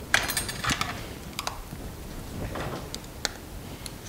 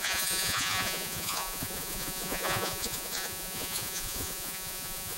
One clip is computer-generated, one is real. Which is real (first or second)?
first